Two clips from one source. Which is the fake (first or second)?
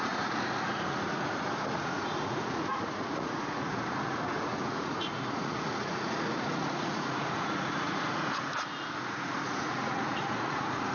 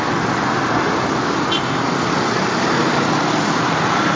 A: first